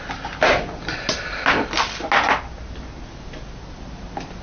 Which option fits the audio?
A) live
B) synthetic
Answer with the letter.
A